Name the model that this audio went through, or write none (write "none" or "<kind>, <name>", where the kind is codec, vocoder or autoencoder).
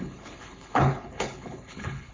codec, HILCodec